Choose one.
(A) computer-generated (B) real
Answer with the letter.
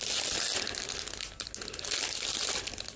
B